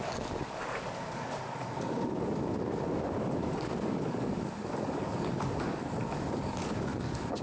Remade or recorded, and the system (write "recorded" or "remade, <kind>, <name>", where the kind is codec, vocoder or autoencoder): remade, codec, DAC